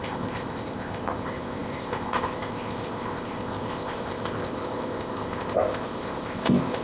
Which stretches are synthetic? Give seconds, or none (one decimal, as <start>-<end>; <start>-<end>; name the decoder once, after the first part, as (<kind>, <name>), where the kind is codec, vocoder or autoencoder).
0.0-6.8 (codec, ZipCodec)